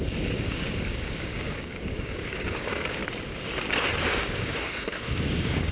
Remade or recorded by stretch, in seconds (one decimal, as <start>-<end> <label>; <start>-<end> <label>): 0.0-3.0 remade; 3.0-4.0 recorded; 4.0-5.7 remade